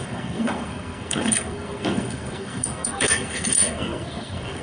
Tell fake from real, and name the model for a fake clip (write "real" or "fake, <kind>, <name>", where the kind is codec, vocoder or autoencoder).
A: fake, codec, SNAC